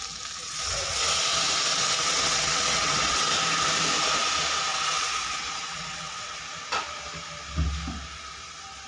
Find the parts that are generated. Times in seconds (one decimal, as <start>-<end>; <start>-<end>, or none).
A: 0.4-1.0; 1.7-3.3; 4.7-6.4